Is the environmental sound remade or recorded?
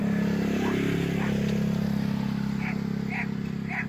recorded